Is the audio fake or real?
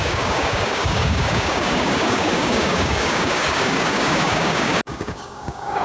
fake